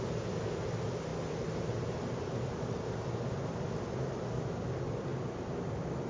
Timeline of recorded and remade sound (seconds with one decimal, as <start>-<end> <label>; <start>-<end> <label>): 0.0-6.1 recorded